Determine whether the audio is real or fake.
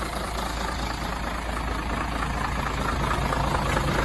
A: real